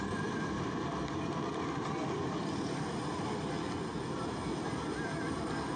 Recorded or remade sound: recorded